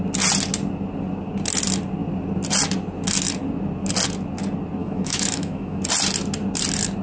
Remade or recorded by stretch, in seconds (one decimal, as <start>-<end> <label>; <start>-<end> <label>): 0.0-4.8 recorded; 4.8-5.8 remade; 5.8-7.0 recorded